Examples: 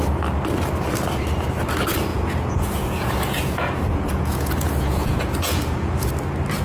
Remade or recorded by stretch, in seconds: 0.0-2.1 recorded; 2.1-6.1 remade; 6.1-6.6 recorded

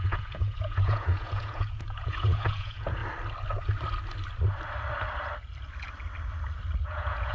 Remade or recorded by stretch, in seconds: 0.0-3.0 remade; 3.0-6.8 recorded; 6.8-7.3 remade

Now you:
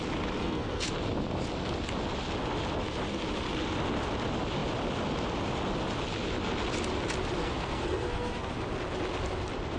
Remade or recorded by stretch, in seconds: 0.0-0.4 recorded; 0.4-0.9 remade; 0.9-7.4 recorded; 7.4-8.5 remade; 8.5-9.8 recorded